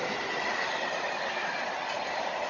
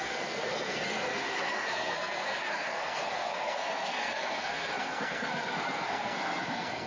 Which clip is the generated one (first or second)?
second